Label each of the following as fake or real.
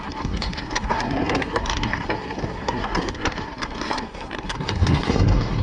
fake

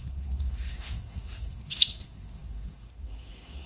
fake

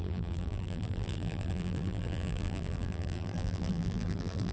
fake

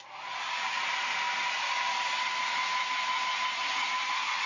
real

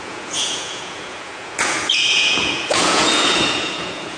fake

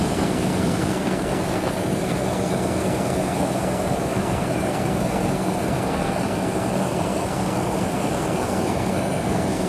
fake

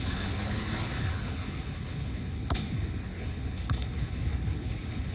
fake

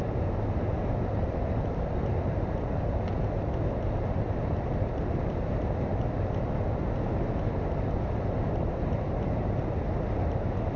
real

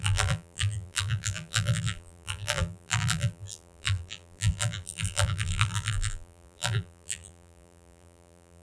fake